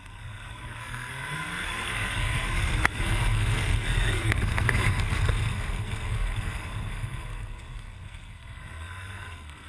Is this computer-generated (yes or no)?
yes